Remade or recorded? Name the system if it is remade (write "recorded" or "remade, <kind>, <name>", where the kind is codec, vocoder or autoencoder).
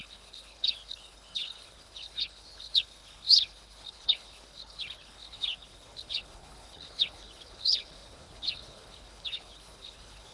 remade, codec, HILCodec